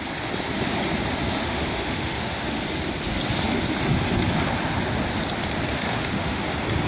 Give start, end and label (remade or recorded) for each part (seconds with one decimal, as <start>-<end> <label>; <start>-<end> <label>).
0.0-1.4 recorded; 1.4-2.6 remade; 2.6-5.7 recorded; 5.7-6.4 remade; 6.4-6.9 recorded